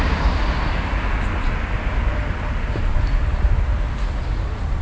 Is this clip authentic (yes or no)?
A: yes